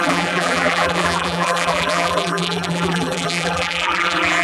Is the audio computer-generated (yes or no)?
yes